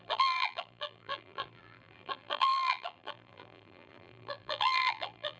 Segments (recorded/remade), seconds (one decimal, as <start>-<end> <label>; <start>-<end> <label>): 0.0-5.4 remade